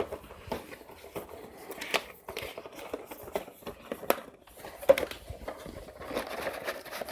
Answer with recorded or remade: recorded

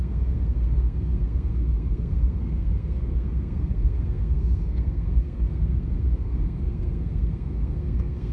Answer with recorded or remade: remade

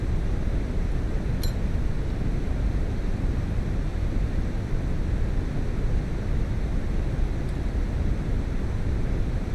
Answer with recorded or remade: recorded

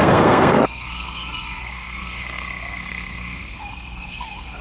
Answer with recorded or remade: remade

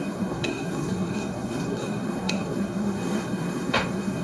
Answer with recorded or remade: remade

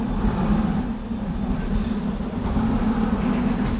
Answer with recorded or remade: recorded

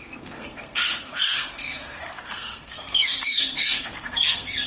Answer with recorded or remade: remade